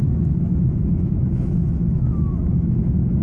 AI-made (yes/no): yes